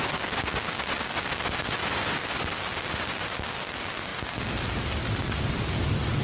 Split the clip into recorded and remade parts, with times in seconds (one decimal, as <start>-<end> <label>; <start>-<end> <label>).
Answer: 0.0-6.2 recorded